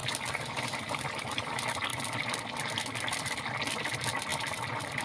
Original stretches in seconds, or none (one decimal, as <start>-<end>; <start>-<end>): 0.0-5.0